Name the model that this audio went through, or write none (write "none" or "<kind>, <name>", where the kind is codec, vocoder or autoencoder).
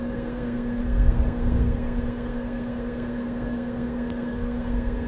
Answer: codec, SNAC